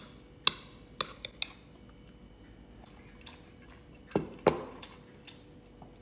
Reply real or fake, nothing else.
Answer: real